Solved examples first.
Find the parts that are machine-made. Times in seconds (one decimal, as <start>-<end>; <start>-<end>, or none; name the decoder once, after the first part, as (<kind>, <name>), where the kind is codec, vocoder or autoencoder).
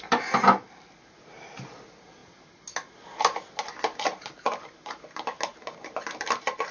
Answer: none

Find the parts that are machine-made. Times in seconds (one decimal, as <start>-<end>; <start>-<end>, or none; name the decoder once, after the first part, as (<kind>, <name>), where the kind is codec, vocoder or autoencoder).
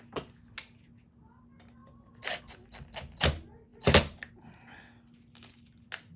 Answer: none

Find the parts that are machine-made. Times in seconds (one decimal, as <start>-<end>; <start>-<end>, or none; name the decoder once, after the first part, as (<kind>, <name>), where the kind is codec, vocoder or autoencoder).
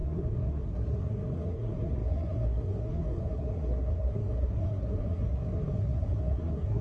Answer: 0.0-6.8 (codec, SNAC)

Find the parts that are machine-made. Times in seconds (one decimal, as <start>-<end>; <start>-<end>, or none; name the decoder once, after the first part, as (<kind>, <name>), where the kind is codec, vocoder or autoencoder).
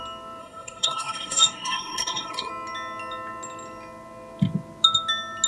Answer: 0.4-2.5 (codec, SNAC)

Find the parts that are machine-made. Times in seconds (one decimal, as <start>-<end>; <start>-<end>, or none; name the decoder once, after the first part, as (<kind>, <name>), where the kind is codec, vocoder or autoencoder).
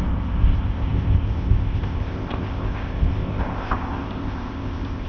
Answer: 0.0-5.1 (codec, ZipCodec)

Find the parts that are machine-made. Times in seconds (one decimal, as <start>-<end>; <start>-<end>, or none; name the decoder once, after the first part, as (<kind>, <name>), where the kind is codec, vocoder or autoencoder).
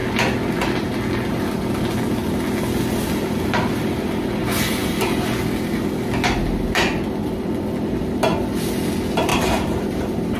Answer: 9.3-10.4 (vocoder, BigVGAN v2)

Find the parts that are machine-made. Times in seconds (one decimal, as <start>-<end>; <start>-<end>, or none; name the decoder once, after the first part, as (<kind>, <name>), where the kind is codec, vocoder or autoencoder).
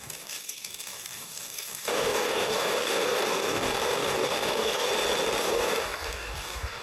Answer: 0.0-4.9 (codec, DAC); 5.4-6.8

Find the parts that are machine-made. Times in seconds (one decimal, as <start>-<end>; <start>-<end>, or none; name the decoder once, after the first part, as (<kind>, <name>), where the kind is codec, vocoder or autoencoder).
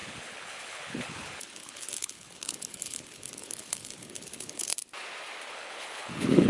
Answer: 0.0-4.7 (codec, HILCodec); 5.5-6.5